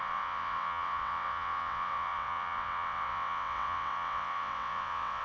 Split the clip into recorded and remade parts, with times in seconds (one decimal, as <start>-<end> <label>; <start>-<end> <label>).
0.0-5.2 remade